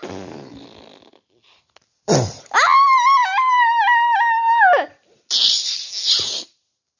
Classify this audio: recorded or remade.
recorded